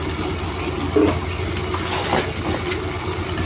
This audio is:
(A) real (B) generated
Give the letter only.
A